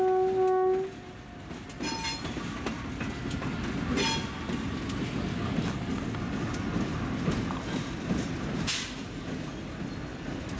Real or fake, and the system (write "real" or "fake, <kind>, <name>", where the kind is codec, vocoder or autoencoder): real